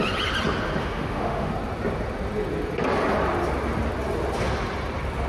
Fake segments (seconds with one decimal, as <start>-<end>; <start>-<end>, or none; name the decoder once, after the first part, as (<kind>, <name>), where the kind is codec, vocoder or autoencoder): 0.8-1.5 (autoencoder, DAC-VAE)